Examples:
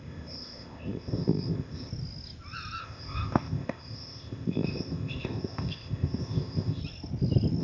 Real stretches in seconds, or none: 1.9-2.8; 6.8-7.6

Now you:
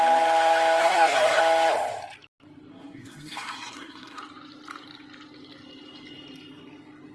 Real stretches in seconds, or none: 0.0-0.8; 1.4-2.7; 4.2-7.1

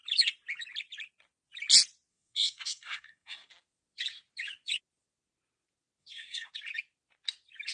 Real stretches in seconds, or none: 0.0-2.1; 3.5-6.0; 6.5-7.7

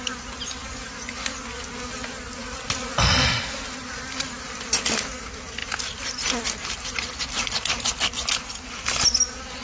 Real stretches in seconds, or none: 0.0-9.6